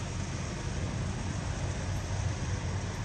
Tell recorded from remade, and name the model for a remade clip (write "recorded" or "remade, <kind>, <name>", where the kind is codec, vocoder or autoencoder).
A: recorded